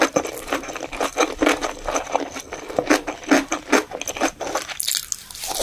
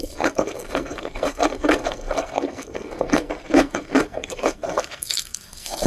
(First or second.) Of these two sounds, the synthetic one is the second